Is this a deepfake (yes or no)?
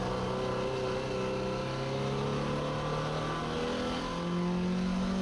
no